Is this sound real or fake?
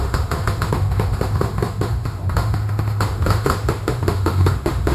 fake